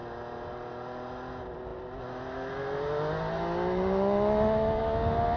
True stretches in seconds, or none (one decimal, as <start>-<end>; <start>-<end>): 0.0-5.4